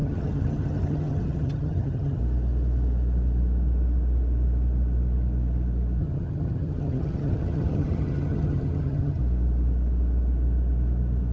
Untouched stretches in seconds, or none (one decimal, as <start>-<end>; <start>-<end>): 2.2-6.0; 9.2-11.3